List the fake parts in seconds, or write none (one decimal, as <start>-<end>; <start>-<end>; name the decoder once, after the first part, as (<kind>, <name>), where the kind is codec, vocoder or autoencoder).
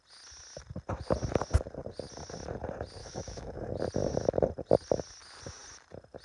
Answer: 3.0-3.7 (autoencoder, DAC-VAE)